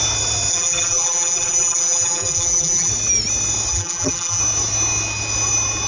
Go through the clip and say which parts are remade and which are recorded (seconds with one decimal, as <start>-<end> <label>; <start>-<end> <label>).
0.0-0.5 recorded; 0.5-2.9 remade; 2.9-3.7 recorded; 3.7-4.4 remade; 4.4-5.9 recorded